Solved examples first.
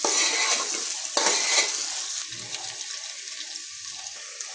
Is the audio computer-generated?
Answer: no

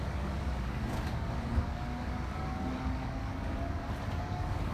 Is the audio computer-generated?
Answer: yes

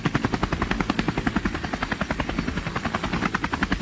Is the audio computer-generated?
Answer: no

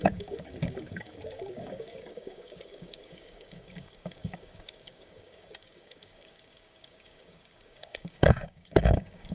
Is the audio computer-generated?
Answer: yes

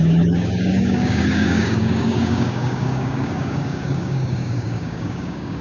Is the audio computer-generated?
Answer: yes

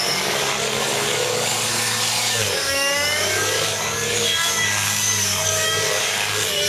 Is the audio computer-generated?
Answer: yes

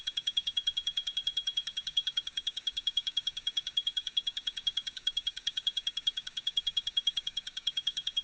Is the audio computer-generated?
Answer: yes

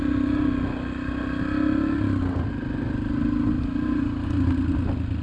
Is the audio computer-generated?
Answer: no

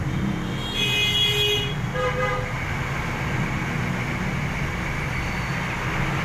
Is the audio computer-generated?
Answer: no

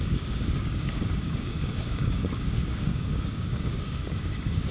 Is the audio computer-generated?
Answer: yes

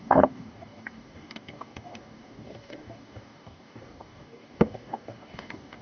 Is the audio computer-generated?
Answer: yes